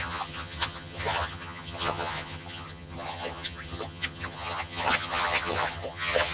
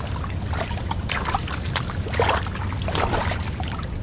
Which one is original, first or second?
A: second